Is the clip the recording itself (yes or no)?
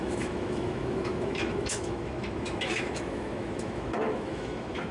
no